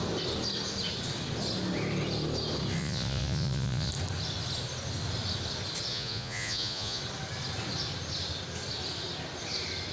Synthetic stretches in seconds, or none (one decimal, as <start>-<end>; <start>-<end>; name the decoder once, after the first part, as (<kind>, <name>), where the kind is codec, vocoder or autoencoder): 2.8-3.9 (vocoder, Vocos); 5.9-7.0